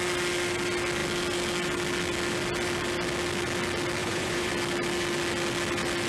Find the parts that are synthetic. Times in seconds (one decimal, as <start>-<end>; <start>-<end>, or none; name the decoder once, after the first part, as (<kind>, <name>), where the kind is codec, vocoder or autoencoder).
4.0-4.5 (vocoder, Vocos)